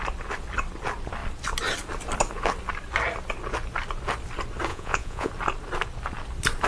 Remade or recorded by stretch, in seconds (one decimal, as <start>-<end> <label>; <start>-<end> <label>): 0.0-4.7 recorded; 4.7-5.3 remade; 5.3-6.7 recorded